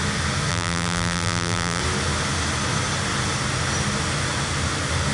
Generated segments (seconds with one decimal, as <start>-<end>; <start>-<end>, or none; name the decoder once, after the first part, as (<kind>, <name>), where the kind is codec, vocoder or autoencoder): 0.5-1.8 (vocoder, BigVGAN v2)